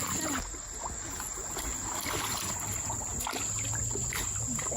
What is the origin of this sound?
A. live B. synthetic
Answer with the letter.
A